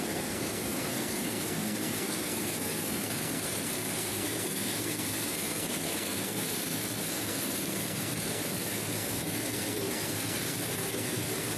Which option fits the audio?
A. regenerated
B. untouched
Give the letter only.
A